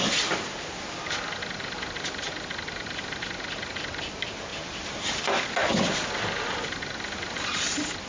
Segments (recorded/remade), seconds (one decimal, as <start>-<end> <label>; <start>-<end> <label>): 0.0-8.1 recorded